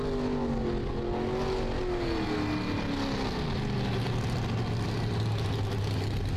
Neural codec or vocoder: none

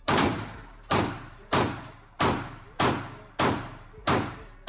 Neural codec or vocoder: vocoder, BigVGAN v2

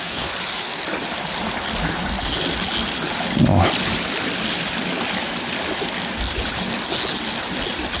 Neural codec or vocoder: none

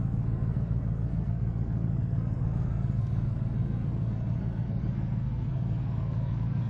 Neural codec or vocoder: codec, SNAC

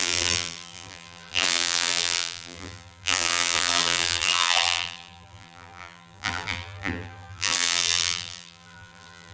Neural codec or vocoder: vocoder, BigVGAN v2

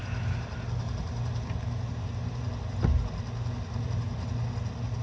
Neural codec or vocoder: none